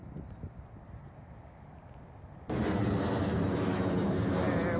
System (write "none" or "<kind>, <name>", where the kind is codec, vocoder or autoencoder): none